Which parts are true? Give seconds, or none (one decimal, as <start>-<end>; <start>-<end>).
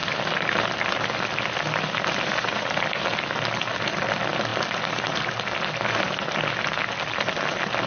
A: 0.6-7.9